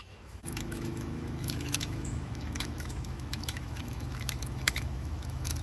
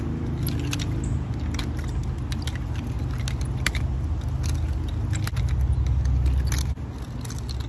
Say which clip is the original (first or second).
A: second